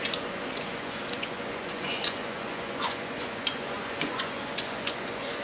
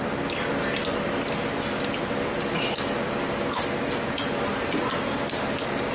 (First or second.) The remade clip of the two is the first